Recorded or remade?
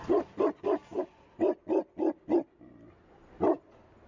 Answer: recorded